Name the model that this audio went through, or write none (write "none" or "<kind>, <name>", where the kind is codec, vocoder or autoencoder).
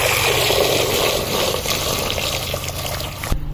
vocoder, BigVGAN v2